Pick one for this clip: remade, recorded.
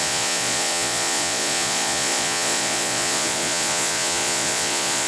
remade